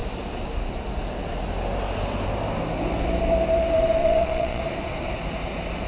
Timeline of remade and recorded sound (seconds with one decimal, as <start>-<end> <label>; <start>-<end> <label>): 0.0-4.0 recorded; 4.0-4.6 remade; 4.6-5.9 recorded